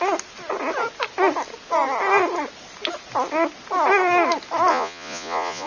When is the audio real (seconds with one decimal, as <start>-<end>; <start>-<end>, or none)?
0.0-4.7